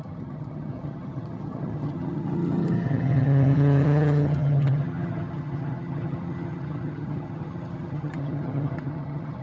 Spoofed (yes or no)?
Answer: yes